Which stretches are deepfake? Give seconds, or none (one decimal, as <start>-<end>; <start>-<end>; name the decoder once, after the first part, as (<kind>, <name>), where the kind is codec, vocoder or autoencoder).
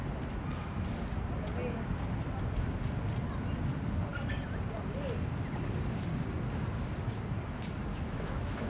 7.9-8.7 (autoencoder, DAC-VAE)